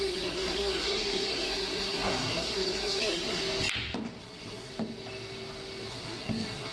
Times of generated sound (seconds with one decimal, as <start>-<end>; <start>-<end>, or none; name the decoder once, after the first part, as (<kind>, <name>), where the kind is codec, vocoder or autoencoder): 0.0-3.4 (codec, SNAC); 4.2-4.7; 5.9-6.7